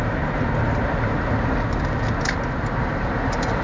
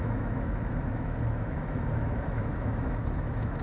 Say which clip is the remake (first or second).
second